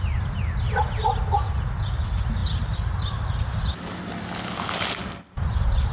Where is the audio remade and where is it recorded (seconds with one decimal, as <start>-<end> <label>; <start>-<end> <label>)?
0.0-5.9 recorded